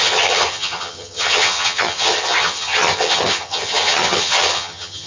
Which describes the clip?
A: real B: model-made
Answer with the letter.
B